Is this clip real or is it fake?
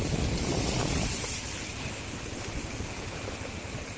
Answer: real